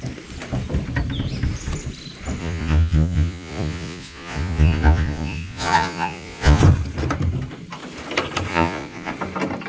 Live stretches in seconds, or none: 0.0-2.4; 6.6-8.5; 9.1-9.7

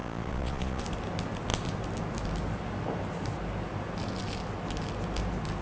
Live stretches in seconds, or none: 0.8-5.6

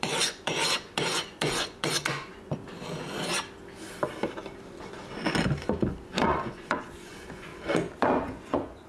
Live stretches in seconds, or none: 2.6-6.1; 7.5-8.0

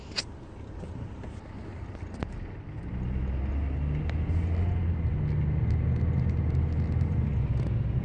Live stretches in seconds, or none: 0.0-8.0

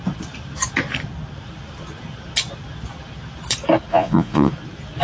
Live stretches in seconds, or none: 0.0-3.9; 4.5-5.0

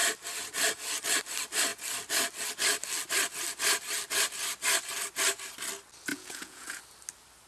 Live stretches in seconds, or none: 0.0-6.1; 6.8-7.5